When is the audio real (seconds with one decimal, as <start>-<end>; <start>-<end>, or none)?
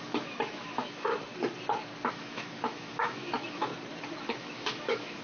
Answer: 1.1-2.1; 3.7-4.2